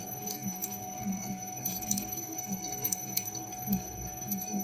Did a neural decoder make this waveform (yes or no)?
yes